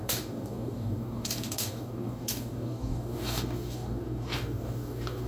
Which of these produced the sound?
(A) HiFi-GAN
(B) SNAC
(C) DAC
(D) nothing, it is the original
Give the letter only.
C